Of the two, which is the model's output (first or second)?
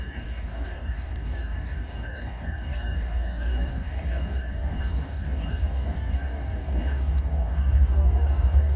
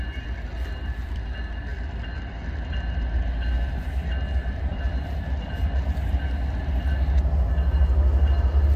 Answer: first